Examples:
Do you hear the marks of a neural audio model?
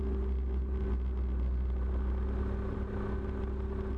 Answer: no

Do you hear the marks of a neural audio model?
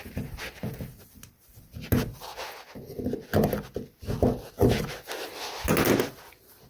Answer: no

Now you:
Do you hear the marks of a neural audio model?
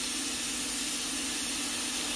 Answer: no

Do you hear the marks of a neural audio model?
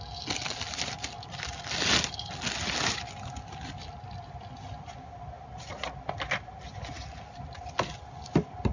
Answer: no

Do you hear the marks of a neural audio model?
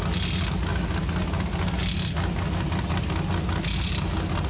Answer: no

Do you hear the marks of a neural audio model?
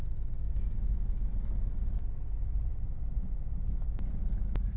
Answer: no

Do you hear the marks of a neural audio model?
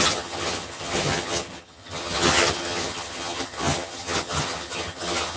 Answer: yes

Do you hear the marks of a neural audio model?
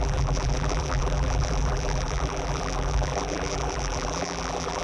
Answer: yes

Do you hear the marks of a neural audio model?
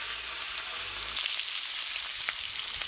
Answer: no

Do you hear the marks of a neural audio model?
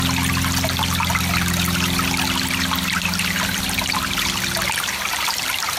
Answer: no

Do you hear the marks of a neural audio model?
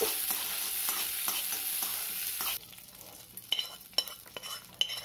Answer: no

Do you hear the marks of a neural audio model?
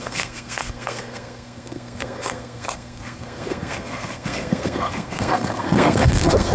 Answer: yes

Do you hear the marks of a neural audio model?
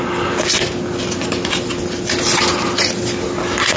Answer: no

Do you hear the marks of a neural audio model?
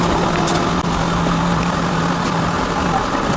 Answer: no